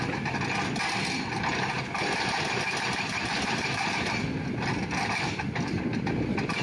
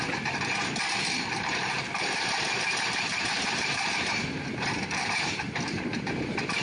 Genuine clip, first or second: first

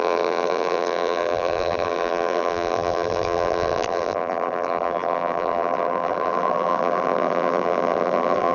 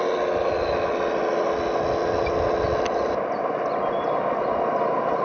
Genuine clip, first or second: second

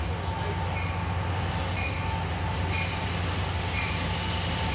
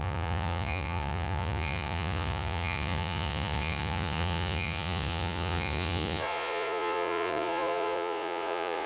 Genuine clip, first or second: first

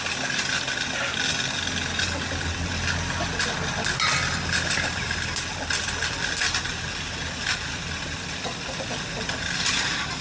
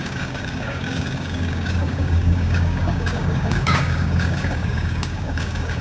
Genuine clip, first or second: first